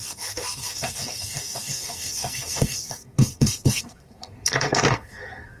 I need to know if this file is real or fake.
fake